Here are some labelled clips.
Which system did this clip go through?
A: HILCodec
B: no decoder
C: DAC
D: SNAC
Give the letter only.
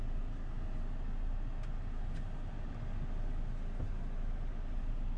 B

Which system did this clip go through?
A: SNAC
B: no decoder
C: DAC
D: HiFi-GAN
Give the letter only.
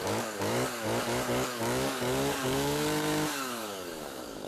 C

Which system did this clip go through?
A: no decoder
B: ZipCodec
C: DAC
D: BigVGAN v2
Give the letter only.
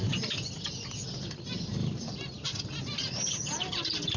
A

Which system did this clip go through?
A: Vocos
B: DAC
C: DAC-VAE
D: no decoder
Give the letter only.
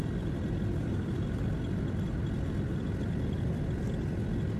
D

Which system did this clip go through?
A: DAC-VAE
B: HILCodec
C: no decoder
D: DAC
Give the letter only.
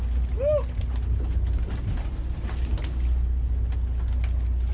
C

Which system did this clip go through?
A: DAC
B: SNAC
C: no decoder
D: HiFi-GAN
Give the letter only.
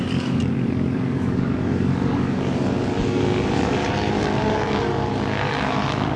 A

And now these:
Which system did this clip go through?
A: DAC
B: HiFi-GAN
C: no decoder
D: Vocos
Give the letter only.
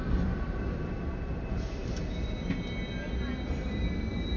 C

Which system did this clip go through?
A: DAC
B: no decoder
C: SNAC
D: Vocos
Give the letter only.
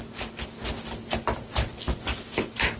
B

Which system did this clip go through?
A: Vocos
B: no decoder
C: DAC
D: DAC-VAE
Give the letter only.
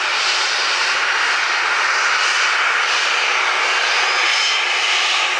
B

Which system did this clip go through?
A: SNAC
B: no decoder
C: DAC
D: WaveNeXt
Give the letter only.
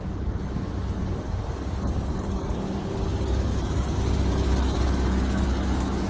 C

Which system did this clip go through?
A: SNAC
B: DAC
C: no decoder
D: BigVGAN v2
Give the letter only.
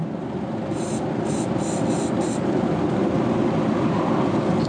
C